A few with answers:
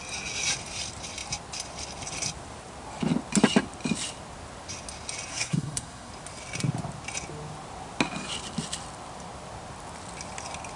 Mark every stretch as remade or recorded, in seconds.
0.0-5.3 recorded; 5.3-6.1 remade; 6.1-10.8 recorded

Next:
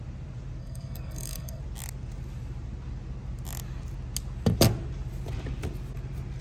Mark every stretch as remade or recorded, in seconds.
0.0-0.6 recorded; 0.6-1.6 remade; 1.6-6.4 recorded

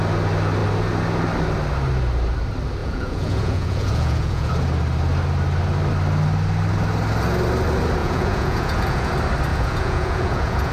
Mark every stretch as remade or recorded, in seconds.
0.0-2.8 recorded; 2.8-4.5 remade; 4.5-8.0 recorded; 8.0-9.1 remade; 9.1-9.5 recorded; 9.5-10.7 remade

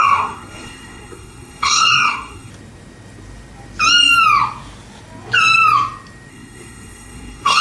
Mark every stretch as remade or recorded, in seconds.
0.0-2.5 remade; 2.5-6.3 recorded; 6.3-7.6 remade